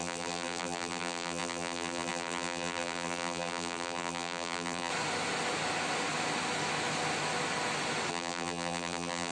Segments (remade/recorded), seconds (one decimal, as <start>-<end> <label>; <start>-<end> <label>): 0.0-4.9 remade; 4.9-8.1 recorded; 8.1-9.3 remade